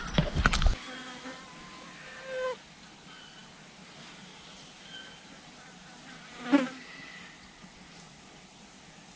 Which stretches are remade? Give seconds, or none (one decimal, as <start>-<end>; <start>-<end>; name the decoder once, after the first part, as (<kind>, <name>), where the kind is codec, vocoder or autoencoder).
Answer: none